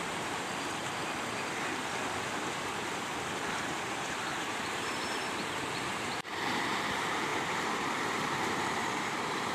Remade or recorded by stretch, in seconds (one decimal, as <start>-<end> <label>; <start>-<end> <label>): 0.0-1.0 remade; 1.0-3.5 recorded; 3.5-7.3 remade; 7.3-7.9 recorded; 7.9-9.5 remade